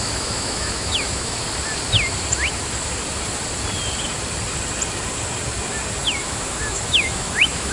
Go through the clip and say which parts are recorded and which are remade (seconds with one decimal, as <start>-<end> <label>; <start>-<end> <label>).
0.0-1.4 remade; 1.4-6.0 recorded; 6.0-7.7 remade